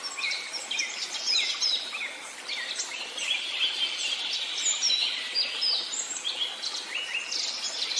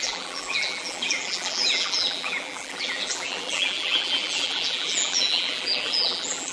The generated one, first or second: second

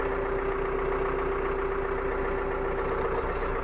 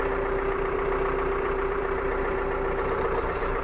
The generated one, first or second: second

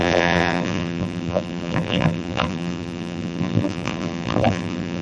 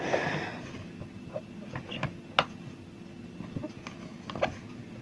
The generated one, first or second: first